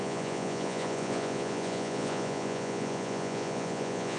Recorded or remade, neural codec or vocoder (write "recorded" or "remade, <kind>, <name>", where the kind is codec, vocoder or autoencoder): remade, vocoder, Vocos